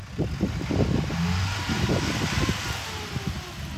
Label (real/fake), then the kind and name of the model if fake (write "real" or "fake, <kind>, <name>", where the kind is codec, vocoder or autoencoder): real